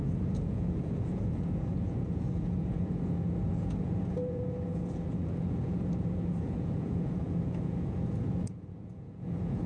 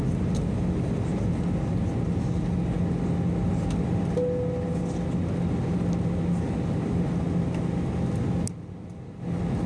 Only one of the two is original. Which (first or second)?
second